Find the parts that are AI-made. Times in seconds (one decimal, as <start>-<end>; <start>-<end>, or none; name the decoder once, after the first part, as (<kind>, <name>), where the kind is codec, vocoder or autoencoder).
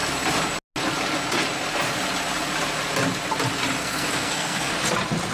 3.8-4.7 (codec, SNAC)